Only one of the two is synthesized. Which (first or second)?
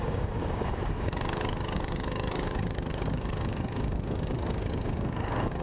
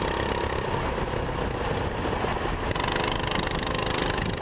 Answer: first